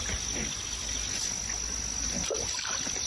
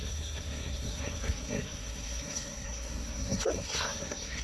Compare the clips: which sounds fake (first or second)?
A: second